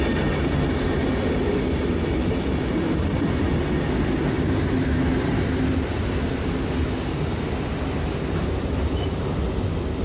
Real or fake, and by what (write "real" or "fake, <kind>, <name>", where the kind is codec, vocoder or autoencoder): real